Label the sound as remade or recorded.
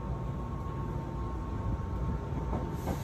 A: recorded